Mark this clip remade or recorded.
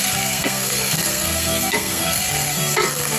remade